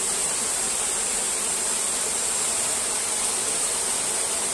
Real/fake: real